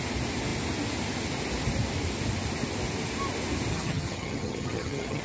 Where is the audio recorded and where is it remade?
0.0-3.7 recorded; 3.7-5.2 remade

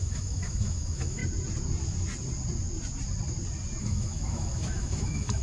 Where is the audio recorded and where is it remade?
0.0-1.2 remade; 1.2-3.8 recorded; 3.8-5.4 remade

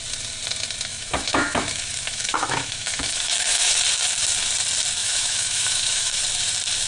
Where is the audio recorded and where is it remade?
0.0-0.9 recorded; 0.9-3.7 remade; 3.7-5.0 recorded; 5.0-6.2 remade; 6.2-6.9 recorded

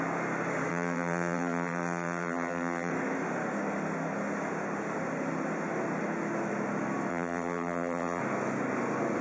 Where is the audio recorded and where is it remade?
0.0-0.7 recorded; 0.7-2.9 remade; 2.9-7.1 recorded; 7.1-8.2 remade; 8.2-9.2 recorded

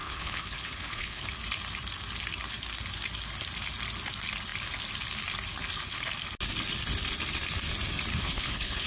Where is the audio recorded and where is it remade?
0.0-1.3 remade; 1.3-8.1 recorded; 8.1-8.9 remade

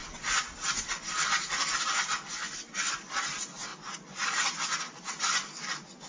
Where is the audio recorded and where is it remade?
0.0-3.7 remade; 3.7-4.8 recorded; 4.8-6.1 remade